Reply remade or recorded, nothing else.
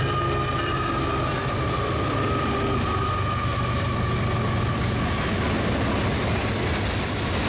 recorded